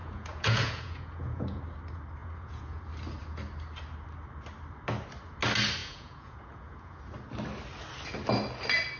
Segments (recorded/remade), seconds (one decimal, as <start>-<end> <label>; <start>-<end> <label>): 0.0-1.6 remade; 1.6-2.2 recorded; 2.2-2.8 remade; 2.8-5.8 recorded; 5.8-7.0 remade; 7.0-9.0 recorded